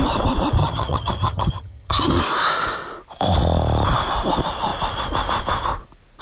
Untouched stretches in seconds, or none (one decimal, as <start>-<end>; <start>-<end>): 0.0-0.6; 2.1-6.2